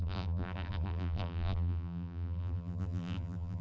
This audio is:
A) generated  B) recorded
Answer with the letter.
A